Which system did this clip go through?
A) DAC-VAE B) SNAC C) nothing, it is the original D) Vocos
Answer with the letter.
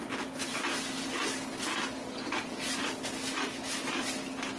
C